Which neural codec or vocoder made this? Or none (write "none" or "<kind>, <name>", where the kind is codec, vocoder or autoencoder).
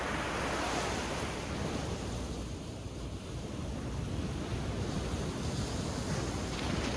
none